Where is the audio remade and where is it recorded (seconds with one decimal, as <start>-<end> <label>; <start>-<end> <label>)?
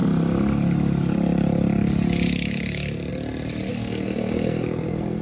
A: 0.0-3.7 recorded; 3.7-5.2 remade